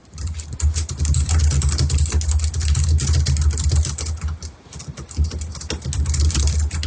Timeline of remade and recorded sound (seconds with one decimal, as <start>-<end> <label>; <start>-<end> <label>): 0.0-1.4 remade; 1.4-6.9 recorded